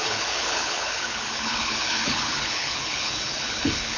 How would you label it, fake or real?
fake